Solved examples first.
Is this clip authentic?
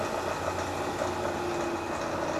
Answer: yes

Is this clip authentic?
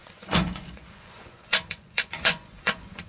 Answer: no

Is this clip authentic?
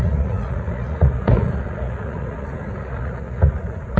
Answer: no